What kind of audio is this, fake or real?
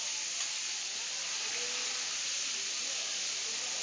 real